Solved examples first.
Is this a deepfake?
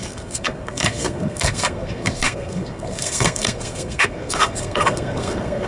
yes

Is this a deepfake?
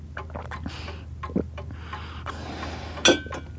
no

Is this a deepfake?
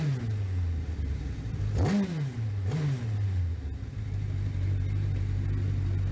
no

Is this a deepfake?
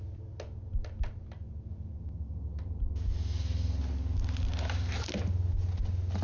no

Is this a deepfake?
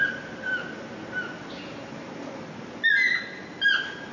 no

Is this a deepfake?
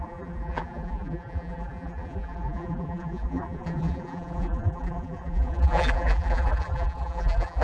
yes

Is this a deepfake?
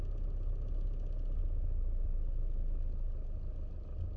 no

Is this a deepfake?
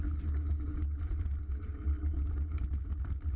no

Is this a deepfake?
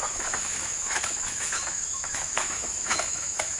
yes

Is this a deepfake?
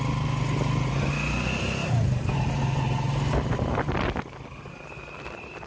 no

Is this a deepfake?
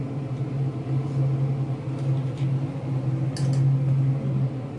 no